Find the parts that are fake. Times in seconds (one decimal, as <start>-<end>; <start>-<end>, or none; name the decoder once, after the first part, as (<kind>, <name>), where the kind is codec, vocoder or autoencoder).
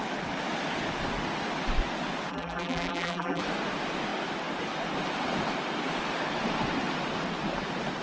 2.3-3.4 (vocoder, BigVGAN v2)